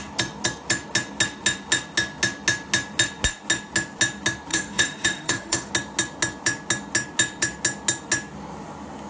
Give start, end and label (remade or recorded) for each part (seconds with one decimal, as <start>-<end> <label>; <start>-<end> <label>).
0.0-4.5 recorded; 4.5-5.7 remade; 5.7-9.1 recorded